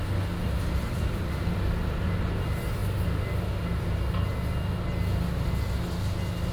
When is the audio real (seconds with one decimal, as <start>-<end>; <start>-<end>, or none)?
0.0-0.4; 2.2-6.5